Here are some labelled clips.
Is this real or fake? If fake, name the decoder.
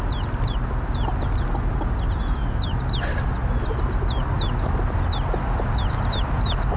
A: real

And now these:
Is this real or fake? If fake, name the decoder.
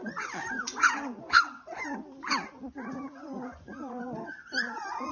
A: fake, vocoder, Vocos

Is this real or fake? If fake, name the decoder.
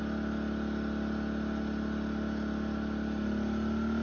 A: real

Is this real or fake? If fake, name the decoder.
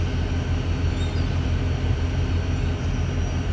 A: real